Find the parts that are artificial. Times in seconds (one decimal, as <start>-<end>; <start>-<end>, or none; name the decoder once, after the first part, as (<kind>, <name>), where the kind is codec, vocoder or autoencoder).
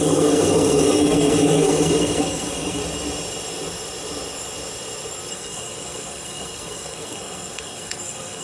0.0-2.8 (codec, SNAC); 5.3-8.4